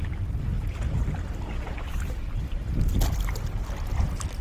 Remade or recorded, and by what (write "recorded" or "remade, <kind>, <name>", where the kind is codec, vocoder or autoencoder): recorded